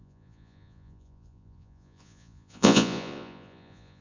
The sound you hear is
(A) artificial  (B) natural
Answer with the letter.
A